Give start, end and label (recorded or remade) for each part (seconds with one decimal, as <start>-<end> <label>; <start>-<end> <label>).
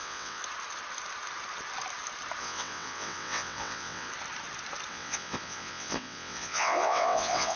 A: 0.0-0.4 remade; 0.4-2.4 recorded; 2.4-4.1 remade; 4.1-4.9 recorded; 4.9-7.6 remade